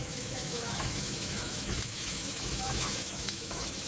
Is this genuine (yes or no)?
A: no